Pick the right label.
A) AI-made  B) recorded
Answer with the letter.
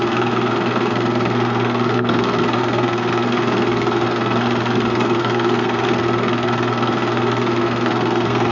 A